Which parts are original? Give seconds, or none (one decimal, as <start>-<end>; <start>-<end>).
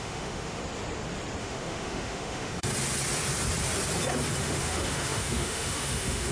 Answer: 0.6-1.4; 2.7-4.4